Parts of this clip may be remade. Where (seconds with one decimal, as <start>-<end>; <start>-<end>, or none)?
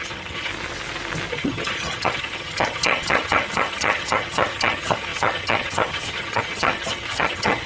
0.0-0.5; 1.3-7.7